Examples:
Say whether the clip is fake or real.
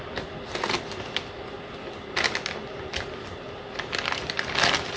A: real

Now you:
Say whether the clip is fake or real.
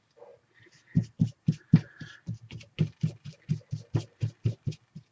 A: real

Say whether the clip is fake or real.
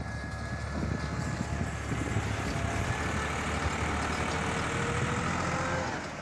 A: real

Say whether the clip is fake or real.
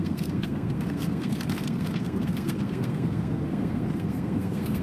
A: fake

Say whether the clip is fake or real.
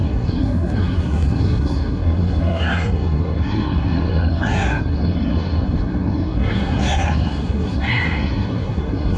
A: fake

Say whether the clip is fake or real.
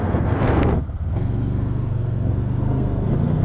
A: fake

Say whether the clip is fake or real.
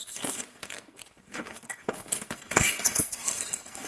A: fake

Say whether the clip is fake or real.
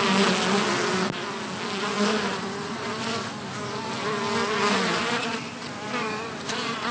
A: real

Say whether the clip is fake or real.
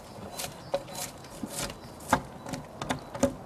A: real